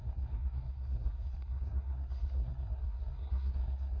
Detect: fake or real fake